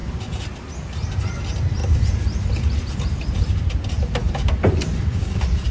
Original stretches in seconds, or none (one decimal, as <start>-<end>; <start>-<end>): 0.0-5.7